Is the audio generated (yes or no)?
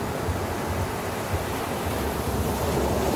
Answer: yes